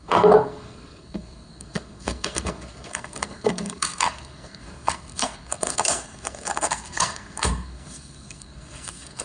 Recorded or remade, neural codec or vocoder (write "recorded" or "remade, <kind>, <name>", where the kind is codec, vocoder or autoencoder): remade, codec, SNAC